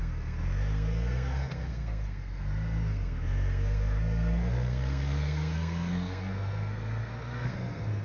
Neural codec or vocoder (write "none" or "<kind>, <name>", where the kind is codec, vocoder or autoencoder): codec, SNAC